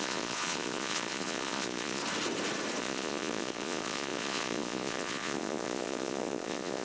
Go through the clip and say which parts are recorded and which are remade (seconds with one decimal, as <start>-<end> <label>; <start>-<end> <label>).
0.0-2.0 remade; 2.0-2.8 recorded; 2.8-6.8 remade